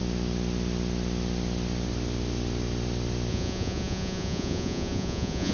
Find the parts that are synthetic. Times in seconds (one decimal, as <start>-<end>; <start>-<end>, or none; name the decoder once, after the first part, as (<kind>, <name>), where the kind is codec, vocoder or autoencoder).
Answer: 3.3-5.5 (vocoder, Vocos)